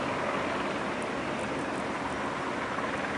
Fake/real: real